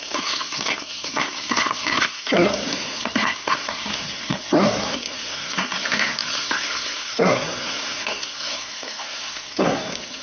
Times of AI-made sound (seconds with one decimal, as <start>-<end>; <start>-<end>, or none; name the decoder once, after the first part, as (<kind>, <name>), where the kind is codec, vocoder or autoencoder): 0.0-10.2 (codec, SNAC)